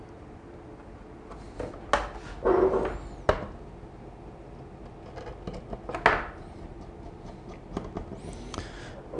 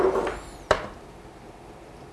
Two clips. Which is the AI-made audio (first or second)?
second